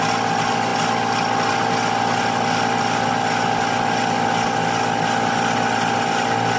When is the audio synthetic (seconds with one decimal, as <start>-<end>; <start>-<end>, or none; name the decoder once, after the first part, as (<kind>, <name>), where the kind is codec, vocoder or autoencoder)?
none